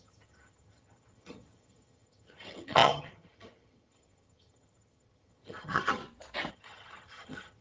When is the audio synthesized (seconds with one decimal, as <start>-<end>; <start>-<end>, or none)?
0.0-6.0; 6.5-7.6